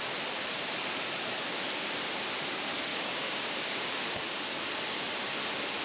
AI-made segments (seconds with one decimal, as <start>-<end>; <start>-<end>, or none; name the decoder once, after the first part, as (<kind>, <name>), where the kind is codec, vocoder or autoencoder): 2.9-4.2 (codec, DAC)